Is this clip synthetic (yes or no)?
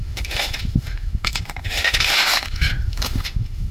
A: yes